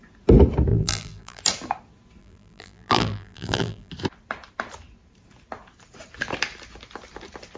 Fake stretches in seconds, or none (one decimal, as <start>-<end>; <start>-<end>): 0.7-1.4; 2.2-3.9